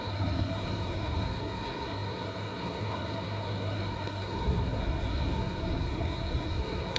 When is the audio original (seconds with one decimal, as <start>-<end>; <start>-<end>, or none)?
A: none